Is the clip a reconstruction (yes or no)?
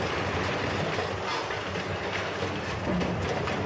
no